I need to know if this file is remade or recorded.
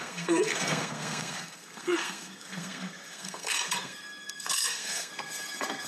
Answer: remade